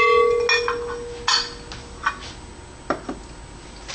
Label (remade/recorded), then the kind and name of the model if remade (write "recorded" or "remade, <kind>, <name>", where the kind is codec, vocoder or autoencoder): recorded